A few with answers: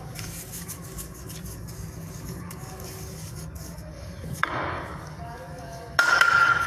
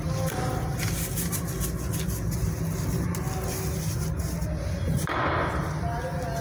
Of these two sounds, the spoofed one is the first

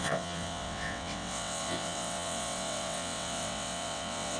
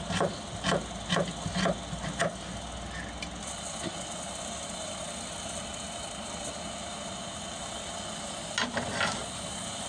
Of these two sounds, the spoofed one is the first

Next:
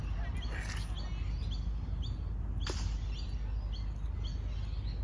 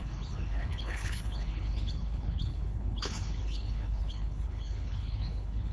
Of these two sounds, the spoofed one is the second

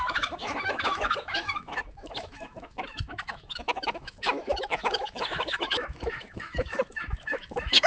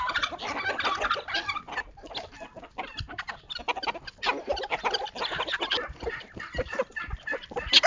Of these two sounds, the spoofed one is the first